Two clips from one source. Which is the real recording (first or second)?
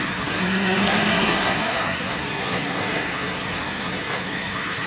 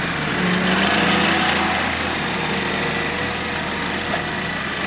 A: second